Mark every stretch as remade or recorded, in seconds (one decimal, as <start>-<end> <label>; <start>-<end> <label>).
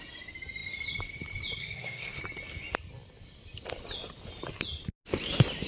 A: 0.0-1.6 recorded; 1.6-2.2 remade; 2.2-5.7 recorded